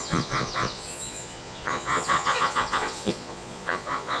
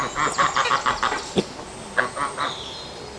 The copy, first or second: first